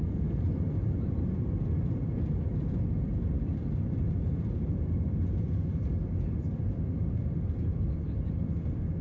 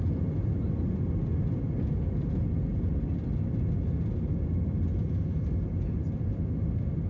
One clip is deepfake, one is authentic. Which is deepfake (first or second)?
first